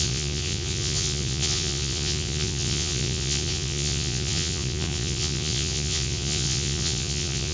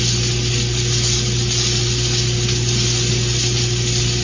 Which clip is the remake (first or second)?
first